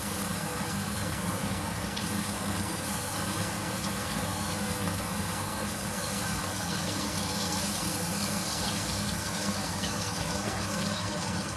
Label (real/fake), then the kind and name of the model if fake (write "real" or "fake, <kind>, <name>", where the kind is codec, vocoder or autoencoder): fake, codec, SNAC